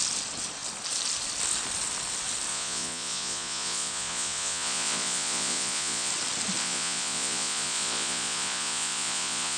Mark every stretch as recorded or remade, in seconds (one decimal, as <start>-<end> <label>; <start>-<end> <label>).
0.0-2.5 recorded; 2.5-6.1 remade; 6.1-6.6 recorded; 6.6-9.6 remade